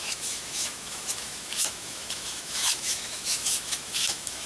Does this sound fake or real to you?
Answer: fake